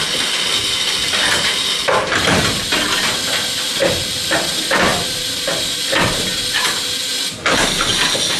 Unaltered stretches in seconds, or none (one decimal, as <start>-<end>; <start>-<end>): 0.0-1.8; 3.0-4.9; 5.6-8.4